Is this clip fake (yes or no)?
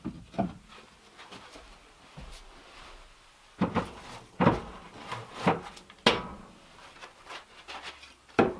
no